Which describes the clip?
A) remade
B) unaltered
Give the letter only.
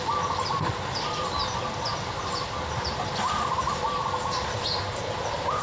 B